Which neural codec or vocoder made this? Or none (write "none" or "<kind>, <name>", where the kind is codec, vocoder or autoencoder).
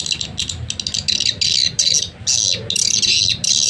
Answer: none